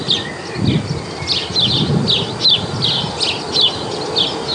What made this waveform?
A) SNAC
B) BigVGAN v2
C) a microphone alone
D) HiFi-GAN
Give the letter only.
C